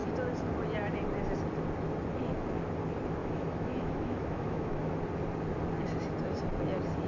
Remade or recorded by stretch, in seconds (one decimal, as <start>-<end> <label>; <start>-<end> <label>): 0.0-3.2 recorded; 3.2-5.0 remade; 5.0-7.1 recorded